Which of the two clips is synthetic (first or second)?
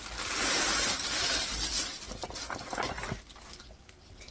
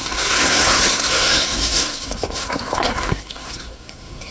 second